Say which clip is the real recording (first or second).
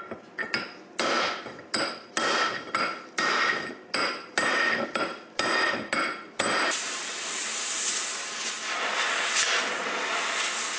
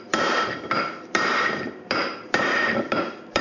first